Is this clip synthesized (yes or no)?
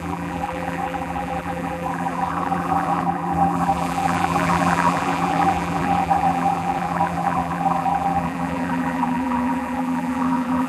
yes